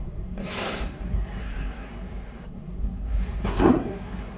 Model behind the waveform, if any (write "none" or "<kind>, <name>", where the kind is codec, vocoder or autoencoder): codec, SNAC